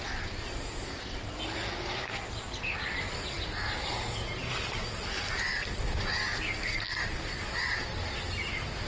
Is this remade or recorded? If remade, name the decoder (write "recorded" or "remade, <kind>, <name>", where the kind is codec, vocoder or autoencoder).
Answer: recorded